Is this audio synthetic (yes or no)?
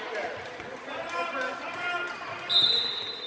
no